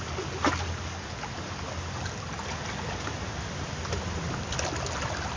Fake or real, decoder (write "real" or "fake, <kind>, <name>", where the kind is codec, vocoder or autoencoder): real